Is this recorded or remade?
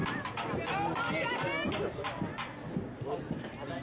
recorded